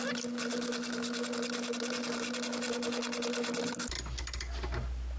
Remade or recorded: recorded